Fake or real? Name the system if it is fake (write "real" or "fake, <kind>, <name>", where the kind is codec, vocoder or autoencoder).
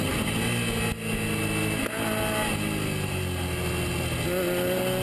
real